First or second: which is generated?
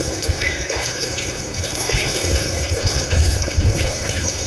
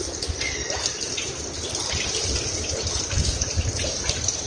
first